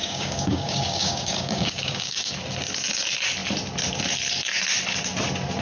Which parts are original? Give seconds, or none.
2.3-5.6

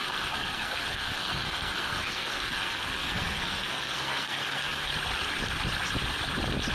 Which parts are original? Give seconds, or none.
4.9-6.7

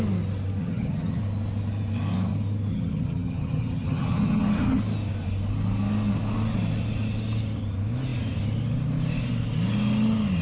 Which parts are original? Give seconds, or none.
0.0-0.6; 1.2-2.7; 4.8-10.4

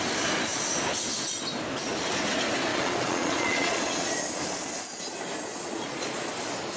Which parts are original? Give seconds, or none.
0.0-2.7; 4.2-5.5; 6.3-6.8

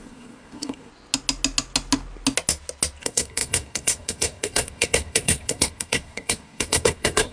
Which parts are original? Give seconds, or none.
0.9-3.0